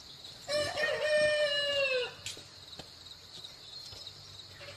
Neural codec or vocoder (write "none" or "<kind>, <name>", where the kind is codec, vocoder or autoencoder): none